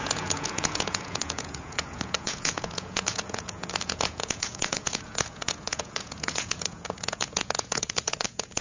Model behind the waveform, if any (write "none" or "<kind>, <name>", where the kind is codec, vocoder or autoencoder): vocoder, Vocos